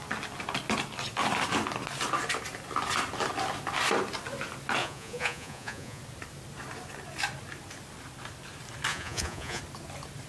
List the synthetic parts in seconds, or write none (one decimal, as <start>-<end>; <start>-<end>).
4.8-6.0; 8.9-9.6